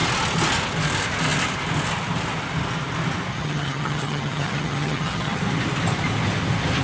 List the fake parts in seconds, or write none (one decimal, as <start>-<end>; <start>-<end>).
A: 3.3-5.4